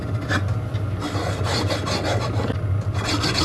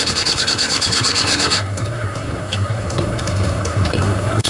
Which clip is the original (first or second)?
first